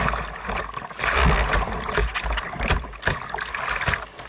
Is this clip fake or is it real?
real